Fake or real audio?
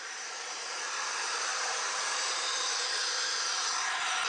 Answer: fake